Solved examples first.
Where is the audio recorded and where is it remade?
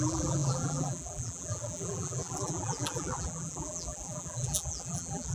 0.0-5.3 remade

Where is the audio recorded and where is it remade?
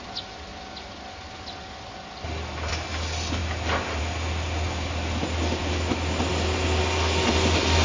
0.0-7.8 recorded